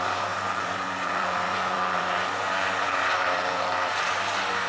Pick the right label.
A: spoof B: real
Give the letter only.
A